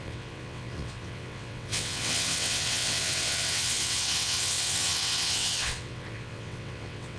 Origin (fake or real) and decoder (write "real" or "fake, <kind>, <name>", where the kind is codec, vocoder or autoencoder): fake, vocoder, WaveNeXt